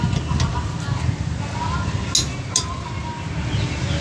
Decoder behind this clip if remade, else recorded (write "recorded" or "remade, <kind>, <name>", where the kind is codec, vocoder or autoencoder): recorded